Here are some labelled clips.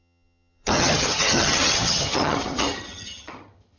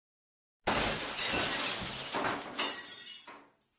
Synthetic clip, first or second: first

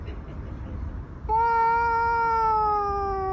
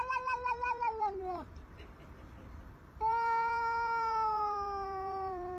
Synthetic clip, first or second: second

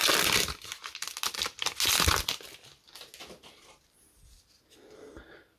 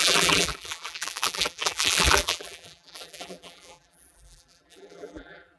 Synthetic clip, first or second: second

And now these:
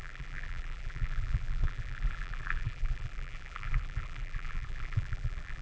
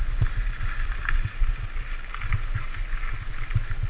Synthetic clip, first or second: first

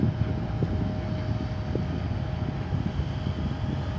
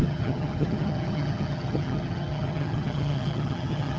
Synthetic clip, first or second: second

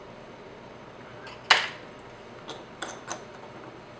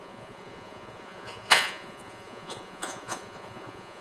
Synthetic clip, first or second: second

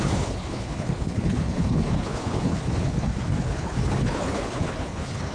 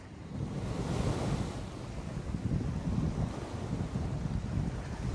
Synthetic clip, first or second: first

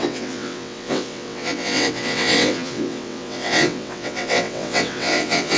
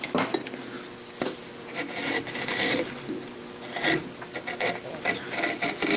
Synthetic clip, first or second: first